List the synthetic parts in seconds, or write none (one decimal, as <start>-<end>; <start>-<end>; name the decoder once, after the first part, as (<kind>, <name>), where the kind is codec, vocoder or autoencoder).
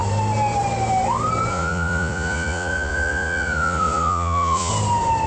1.5-4.7 (vocoder, Vocos)